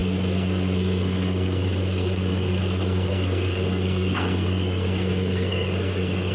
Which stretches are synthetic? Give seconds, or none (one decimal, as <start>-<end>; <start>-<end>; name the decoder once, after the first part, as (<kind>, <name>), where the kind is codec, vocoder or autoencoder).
0.0-6.3 (codec, SNAC)